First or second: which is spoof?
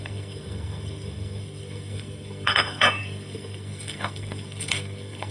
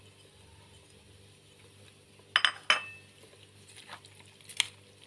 first